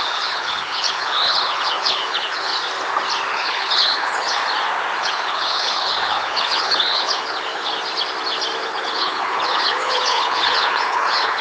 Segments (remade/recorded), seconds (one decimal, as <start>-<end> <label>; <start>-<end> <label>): 0.0-2.5 remade; 2.5-3.3 recorded; 3.3-4.4 remade; 4.4-5.0 recorded; 5.0-7.7 remade; 7.7-8.6 recorded; 8.6-11.4 remade